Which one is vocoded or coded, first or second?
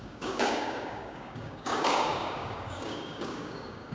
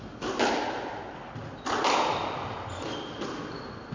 first